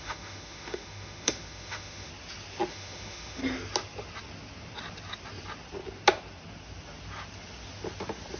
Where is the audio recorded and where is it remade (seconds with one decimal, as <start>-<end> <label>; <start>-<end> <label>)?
0.0-2.1 remade; 2.1-2.7 recorded; 2.7-3.4 remade; 3.4-8.4 recorded